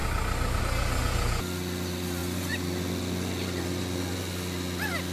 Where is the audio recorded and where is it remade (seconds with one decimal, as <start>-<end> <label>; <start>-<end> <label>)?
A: 0.0-5.1 recorded